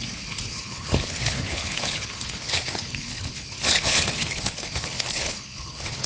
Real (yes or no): no